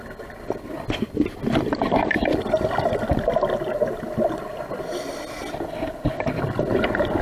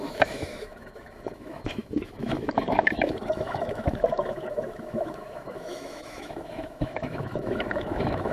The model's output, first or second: second